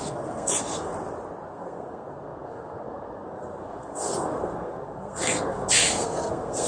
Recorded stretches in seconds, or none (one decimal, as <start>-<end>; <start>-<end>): 0.9-1.5

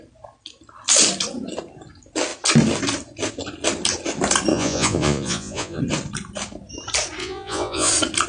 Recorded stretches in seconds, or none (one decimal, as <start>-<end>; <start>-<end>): 0.0-4.5; 5.8-7.2; 7.9-8.3

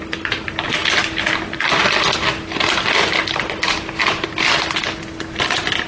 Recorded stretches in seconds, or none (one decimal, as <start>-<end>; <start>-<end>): 0.0-0.8; 1.8-3.2; 3.7-5.9

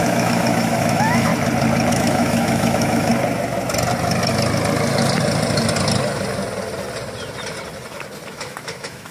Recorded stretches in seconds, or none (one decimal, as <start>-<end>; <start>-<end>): 1.3-1.9; 3.1-8.3

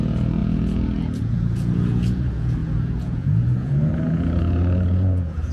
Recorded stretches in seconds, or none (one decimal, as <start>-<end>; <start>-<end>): none

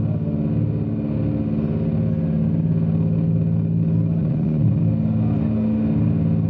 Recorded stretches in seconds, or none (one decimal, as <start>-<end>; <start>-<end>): 0.0-4.2; 4.8-6.5

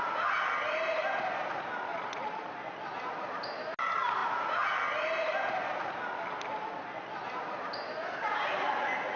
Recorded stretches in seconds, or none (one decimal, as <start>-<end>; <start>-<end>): 0.0-1.9; 2.5-9.2

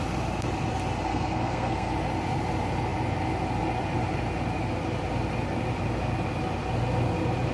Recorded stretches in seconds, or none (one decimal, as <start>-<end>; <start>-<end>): 0.0-1.1; 1.9-7.5